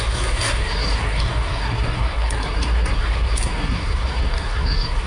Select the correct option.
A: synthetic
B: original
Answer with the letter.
A